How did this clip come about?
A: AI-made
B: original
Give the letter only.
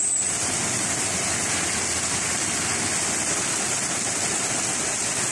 B